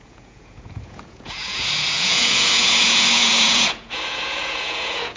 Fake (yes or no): yes